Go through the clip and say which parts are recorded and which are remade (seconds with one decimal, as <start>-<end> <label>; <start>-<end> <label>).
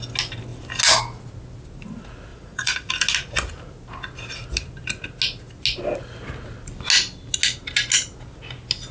0.0-2.3 recorded; 2.3-2.9 remade; 2.9-8.9 recorded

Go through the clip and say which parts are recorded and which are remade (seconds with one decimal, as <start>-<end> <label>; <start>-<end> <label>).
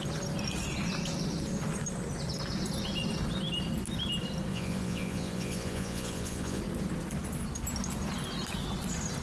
0.0-4.5 recorded; 4.5-6.6 remade; 6.6-9.2 recorded